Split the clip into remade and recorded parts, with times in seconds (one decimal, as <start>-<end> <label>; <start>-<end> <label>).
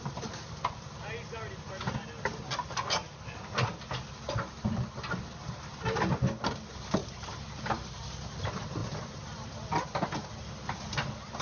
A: 0.0-7.0 recorded; 7.0-8.4 remade; 8.4-8.8 recorded; 8.8-10.1 remade; 10.1-11.4 recorded